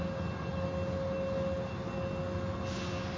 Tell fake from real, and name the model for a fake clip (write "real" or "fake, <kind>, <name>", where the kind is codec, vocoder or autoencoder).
real